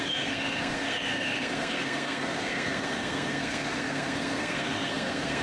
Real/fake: fake